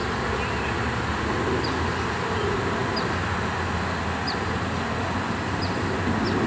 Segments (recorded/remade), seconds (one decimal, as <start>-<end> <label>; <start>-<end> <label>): 0.0-6.5 recorded